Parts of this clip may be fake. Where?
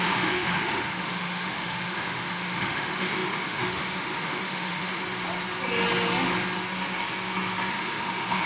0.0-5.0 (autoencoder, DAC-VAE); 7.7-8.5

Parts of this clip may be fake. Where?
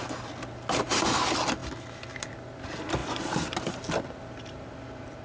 none